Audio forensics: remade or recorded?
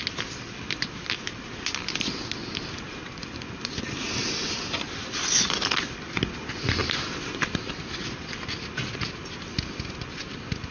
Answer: recorded